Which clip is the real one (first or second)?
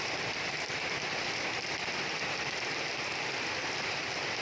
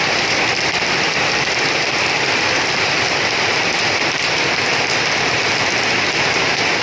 first